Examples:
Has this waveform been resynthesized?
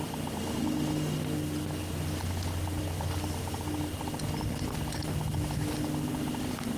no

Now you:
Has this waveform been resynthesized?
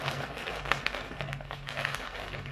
yes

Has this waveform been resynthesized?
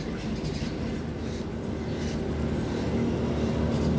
no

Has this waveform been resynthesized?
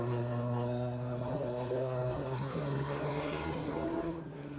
yes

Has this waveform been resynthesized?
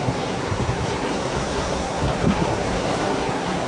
yes